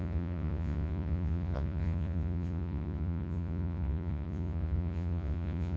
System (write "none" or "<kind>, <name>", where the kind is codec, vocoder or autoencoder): vocoder, Vocos